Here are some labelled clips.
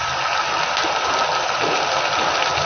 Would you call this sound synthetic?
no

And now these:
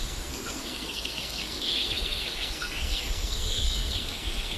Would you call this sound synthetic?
yes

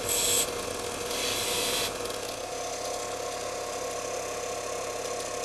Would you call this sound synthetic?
no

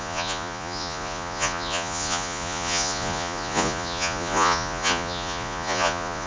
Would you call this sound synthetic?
yes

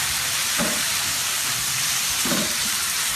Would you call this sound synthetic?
yes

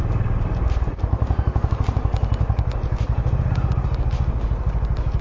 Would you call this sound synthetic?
no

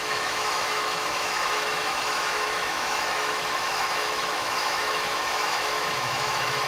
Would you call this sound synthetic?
yes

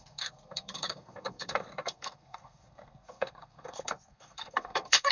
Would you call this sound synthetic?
yes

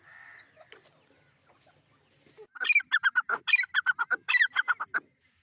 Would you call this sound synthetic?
no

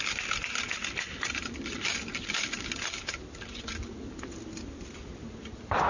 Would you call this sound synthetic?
no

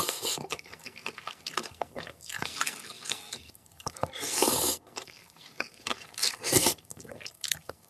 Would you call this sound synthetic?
yes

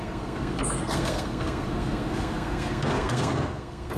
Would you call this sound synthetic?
yes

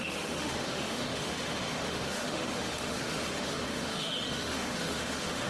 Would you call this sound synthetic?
yes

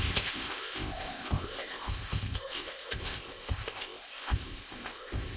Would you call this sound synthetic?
yes